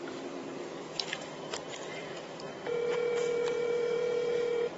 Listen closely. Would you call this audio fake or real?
fake